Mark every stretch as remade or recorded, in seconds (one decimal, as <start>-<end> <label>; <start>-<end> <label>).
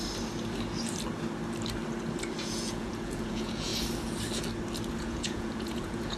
0.0-2.4 recorded; 2.4-3.7 remade; 3.7-4.9 recorded; 4.9-6.2 remade